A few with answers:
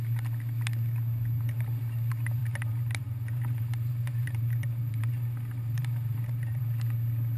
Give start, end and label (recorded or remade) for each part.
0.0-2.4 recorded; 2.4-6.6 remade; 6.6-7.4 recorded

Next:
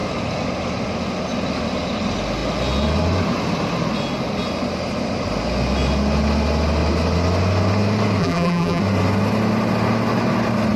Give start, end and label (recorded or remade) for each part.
0.0-8.2 recorded; 8.2-8.8 remade; 8.8-10.8 recorded

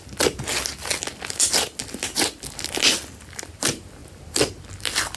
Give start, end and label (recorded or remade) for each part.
0.0-4.0 recorded; 4.0-4.5 remade; 4.5-5.2 recorded